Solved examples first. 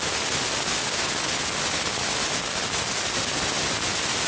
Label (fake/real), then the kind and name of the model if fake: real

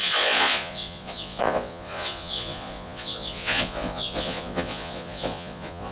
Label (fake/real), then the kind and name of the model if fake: fake, vocoder, Vocos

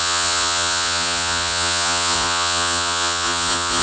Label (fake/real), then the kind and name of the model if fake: fake, vocoder, Vocos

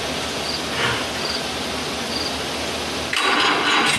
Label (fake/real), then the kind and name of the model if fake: real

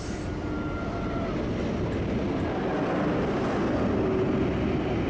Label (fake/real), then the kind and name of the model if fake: real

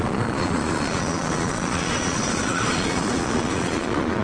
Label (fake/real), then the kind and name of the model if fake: fake, vocoder, Vocos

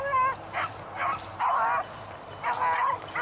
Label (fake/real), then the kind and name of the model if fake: real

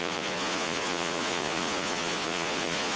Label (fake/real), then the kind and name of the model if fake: fake, vocoder, Vocos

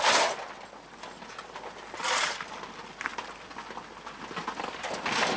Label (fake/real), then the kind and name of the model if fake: real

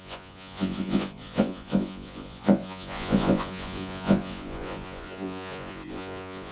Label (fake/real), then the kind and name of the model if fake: fake, vocoder, Vocos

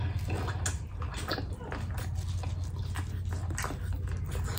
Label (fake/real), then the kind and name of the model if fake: real